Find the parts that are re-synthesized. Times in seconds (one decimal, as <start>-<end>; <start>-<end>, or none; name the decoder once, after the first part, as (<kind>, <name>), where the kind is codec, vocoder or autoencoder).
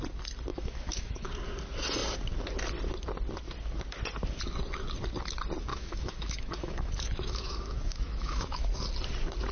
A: 0.5-1.3 (autoencoder, DAC-VAE); 5.7-8.7